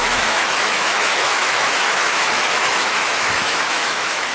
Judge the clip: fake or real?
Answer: fake